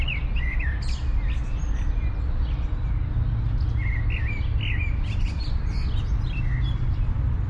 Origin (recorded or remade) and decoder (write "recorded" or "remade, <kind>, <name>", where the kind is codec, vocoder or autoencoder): recorded